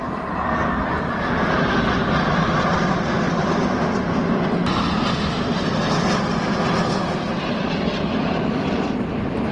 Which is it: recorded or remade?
recorded